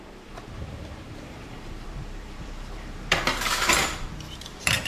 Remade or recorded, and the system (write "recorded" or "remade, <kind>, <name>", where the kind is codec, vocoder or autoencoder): remade, vocoder, BigVGAN v2